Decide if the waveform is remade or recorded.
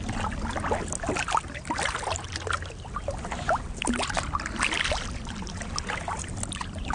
recorded